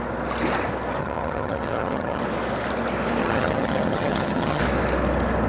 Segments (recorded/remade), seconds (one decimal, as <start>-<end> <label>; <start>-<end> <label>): 0.0-1.0 recorded; 1.0-2.2 remade; 2.2-3.2 recorded; 3.2-4.6 remade; 4.6-5.5 recorded